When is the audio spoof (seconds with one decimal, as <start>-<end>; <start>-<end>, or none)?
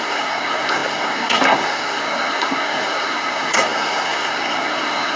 0.0-5.2